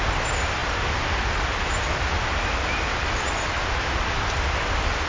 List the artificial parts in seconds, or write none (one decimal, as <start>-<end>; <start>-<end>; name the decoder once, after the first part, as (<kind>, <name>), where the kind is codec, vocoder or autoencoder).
none